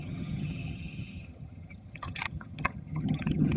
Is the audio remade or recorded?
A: remade